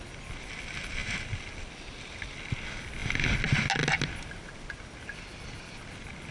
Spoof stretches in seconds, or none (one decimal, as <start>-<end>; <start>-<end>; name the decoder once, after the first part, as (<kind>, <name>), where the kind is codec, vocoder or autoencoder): none